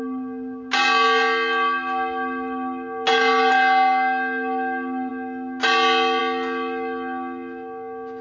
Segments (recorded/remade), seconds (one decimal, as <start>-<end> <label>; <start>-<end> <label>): 0.0-8.2 recorded